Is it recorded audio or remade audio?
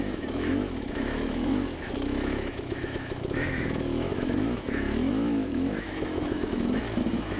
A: remade